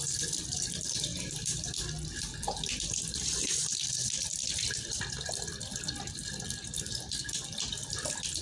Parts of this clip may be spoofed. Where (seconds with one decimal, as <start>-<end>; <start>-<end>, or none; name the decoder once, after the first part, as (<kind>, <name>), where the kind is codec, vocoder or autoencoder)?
0.0-8.4 (vocoder, BigVGAN v2)